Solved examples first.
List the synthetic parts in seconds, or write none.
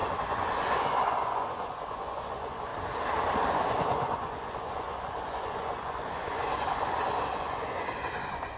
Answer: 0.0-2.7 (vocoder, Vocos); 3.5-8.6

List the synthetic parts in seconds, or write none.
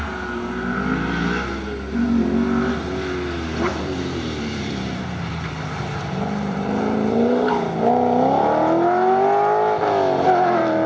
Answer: 3.7-7.5 (vocoder, BigVGAN v2)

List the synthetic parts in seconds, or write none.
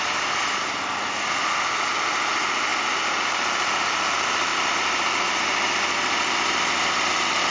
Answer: 2.7-3.8 (vocoder, BigVGAN v2); 4.5-7.1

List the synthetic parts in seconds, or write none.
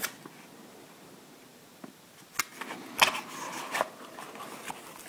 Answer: none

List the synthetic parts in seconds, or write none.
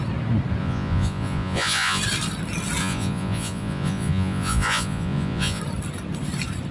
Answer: 0.6-2.0 (vocoder, Vocos); 2.8-5.6